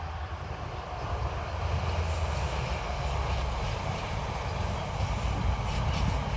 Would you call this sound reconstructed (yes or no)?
no